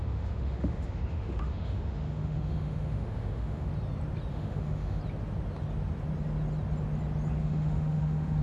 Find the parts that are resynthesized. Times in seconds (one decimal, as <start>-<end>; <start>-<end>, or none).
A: 0.0-3.7; 4.3-5.0; 7.4-8.4